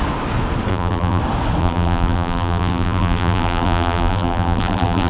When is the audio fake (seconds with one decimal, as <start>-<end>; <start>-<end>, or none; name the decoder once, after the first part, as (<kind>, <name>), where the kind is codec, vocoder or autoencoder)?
0.7-1.2 (vocoder, BigVGAN v2); 1.6-5.1